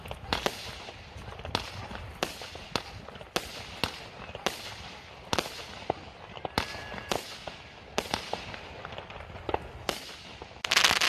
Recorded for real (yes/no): yes